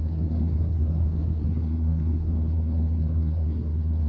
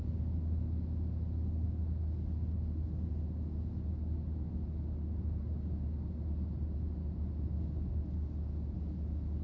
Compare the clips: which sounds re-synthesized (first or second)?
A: first